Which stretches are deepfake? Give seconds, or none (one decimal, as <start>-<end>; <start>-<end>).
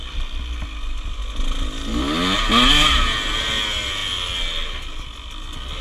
none